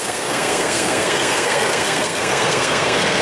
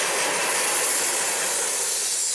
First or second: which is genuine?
second